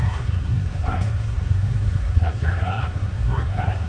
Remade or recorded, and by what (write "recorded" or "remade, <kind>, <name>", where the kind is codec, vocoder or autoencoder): remade, codec, SNAC